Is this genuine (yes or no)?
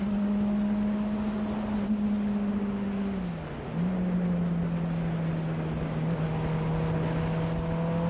yes